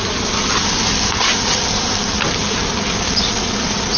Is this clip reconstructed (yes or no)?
no